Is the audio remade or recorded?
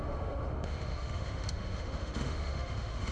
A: remade